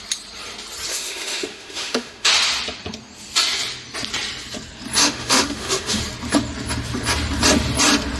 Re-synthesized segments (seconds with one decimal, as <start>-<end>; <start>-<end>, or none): 0.9-2.3; 5.0-6.0